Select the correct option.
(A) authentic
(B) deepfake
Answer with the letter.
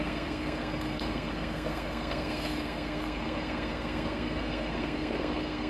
B